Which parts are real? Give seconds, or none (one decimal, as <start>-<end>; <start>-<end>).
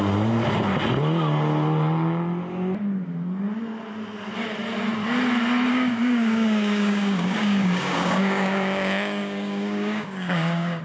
0.0-5.7